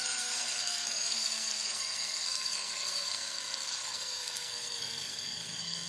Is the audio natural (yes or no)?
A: no